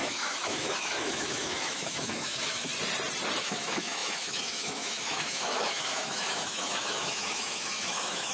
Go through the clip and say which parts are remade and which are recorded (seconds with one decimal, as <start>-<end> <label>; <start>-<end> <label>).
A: 0.0-2.7 remade; 2.7-3.4 recorded; 3.4-8.3 remade